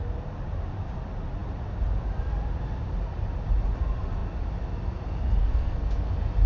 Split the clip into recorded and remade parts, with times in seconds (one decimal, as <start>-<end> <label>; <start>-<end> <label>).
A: 0.0-5.4 recorded; 5.4-6.1 remade; 6.1-6.5 recorded